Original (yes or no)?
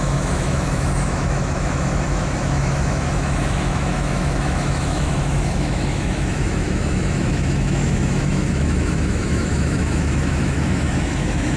no